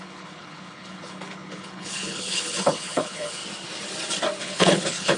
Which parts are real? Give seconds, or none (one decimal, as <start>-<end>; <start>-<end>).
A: 3.4-4.4